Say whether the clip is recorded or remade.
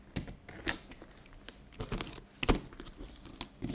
recorded